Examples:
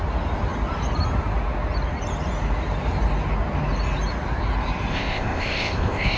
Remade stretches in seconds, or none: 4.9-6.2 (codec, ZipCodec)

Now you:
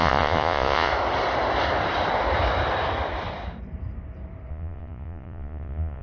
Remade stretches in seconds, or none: 0.0-0.9 (vocoder, Vocos); 4.5-6.0

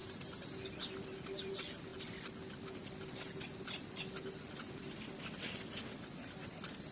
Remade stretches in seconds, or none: none

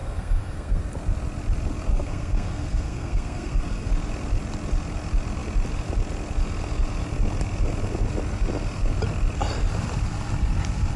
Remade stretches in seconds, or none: 0.0-0.8 (codec, SNAC); 1.9-3.9

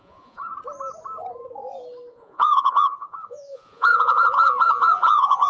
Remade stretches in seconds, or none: 0.0-0.5 (vocoder, Vocos); 2.1-5.5